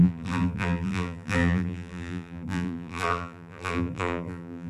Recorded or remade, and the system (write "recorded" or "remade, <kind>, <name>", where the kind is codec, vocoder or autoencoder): remade, vocoder, BigVGAN v2